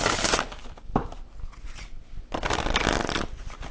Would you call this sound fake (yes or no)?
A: no